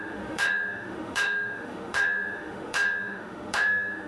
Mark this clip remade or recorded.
remade